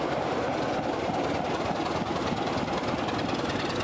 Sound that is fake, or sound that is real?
real